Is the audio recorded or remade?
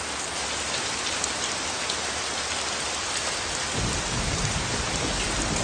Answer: recorded